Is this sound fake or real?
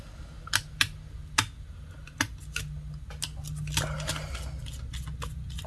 real